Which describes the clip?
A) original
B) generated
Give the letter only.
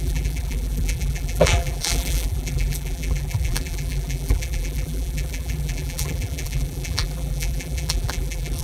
B